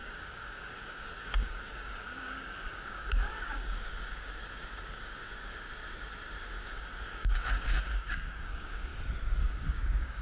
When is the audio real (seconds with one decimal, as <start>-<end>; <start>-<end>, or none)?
5.7-6.4; 8.9-9.4